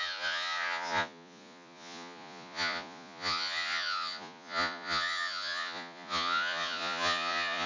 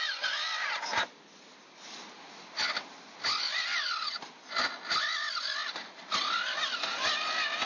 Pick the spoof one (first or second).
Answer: first